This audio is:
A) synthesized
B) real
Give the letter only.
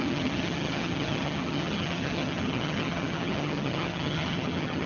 A